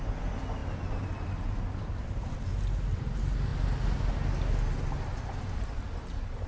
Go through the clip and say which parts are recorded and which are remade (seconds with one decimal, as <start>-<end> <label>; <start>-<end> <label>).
0.0-6.5 recorded